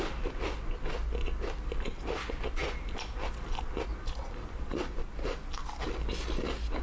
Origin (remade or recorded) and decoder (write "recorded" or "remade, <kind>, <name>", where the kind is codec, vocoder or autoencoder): recorded